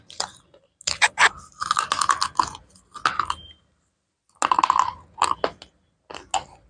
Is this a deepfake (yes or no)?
no